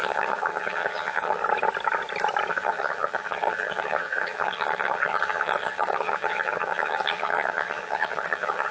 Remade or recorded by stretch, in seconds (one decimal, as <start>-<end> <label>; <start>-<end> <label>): 0.0-1.4 remade; 1.4-2.5 recorded; 2.5-8.7 remade